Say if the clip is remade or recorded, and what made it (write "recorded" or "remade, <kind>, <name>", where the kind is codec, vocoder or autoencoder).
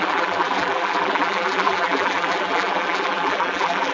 remade, vocoder, BigVGAN v2